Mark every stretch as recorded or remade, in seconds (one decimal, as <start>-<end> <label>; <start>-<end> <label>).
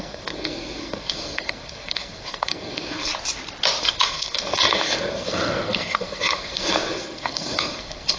0.0-3.1 remade; 3.1-3.8 recorded; 3.8-8.2 remade